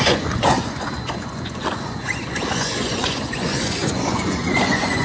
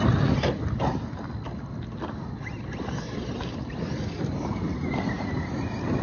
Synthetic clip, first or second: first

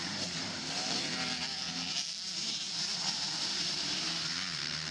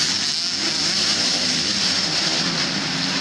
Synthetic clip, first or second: first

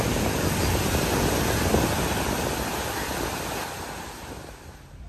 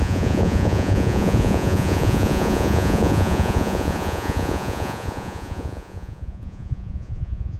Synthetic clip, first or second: second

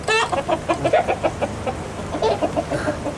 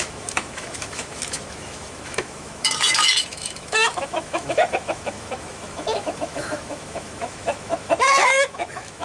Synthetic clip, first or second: second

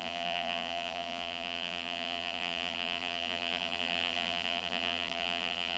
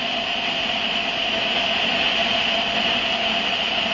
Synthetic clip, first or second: first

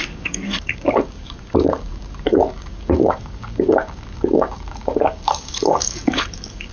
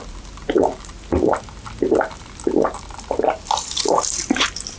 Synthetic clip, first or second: first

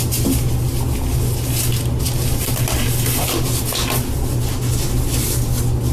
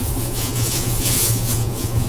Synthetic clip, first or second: second